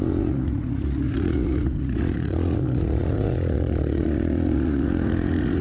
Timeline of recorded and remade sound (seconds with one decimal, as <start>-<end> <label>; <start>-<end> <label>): 0.0-5.6 remade